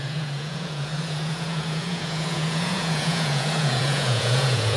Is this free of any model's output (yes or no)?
no